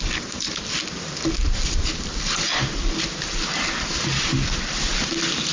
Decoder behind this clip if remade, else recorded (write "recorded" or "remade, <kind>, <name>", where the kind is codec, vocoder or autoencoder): remade, vocoder, BigVGAN v2